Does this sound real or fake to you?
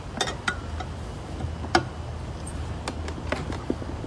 real